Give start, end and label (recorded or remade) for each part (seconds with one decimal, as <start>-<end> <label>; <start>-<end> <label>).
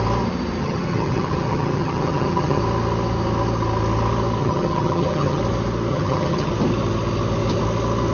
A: 0.0-0.6 recorded; 0.6-2.6 remade; 2.6-4.4 recorded; 4.4-5.4 remade; 5.4-5.9 recorded; 5.9-6.5 remade; 6.5-8.1 recorded